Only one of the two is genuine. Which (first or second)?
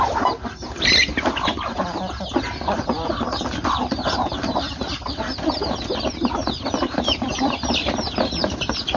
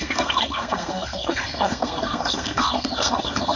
first